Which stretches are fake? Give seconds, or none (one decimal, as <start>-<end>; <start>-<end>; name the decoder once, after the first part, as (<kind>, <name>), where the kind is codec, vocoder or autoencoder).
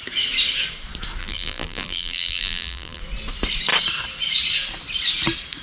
1.2-3.0 (vocoder, BigVGAN v2)